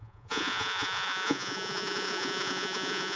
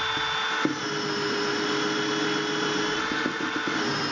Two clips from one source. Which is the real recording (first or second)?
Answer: second